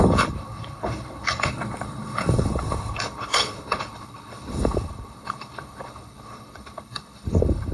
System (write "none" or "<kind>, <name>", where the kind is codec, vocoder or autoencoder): codec, HILCodec